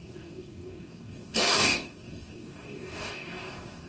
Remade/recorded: remade